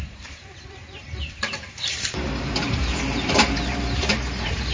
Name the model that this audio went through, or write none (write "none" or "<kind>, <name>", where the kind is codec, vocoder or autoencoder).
vocoder, BigVGAN v2